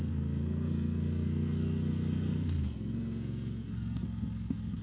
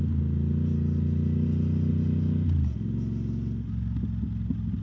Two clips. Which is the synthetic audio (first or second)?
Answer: first